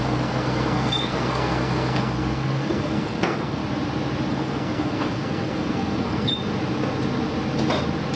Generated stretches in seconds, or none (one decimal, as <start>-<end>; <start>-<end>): 0.0-3.6; 4.3-6.3